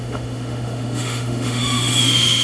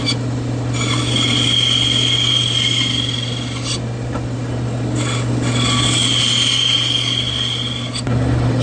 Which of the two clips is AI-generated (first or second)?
first